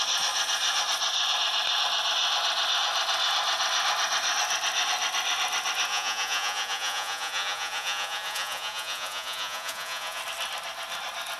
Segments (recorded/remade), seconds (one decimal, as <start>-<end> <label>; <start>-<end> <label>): 0.0-5.9 recorded; 5.9-10.2 remade; 10.2-11.4 recorded